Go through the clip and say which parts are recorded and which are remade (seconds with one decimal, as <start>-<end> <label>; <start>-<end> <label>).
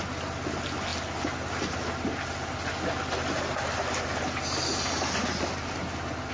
0.0-6.3 recorded